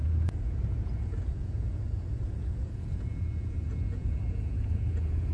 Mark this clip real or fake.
fake